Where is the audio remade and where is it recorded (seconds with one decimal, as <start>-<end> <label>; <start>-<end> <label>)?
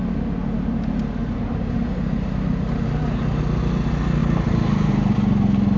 0.0-1.2 recorded; 1.2-3.4 remade; 3.4-4.2 recorded; 4.2-4.9 remade; 4.9-5.8 recorded